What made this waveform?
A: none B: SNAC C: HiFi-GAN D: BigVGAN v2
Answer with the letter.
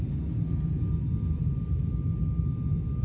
A